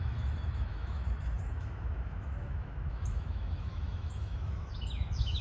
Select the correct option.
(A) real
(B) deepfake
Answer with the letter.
B